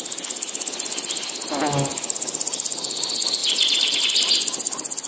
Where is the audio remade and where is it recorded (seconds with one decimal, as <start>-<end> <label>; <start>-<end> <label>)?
0.0-3.4 recorded; 3.4-4.0 remade; 4.0-5.1 recorded